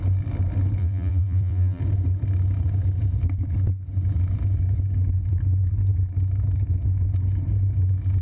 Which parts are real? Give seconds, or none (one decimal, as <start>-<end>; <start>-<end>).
0.0-0.8; 1.8-8.2